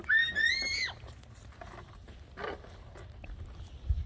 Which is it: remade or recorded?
recorded